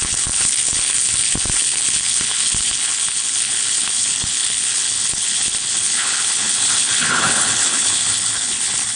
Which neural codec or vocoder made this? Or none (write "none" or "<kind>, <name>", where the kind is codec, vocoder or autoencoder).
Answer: codec, HILCodec